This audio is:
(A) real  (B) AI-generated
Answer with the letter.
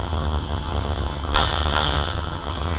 B